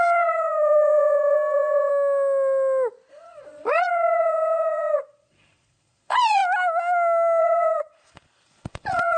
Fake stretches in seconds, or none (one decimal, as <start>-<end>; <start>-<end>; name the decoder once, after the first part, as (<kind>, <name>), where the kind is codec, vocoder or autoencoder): 0.0-1.9 (vocoder, Vocos); 3.1-6.4; 7.4-9.2